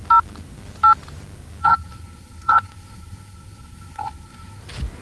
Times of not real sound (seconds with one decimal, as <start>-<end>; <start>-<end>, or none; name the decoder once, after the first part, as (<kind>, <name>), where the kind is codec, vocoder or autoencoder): 1.6-4.6 (codec, SNAC)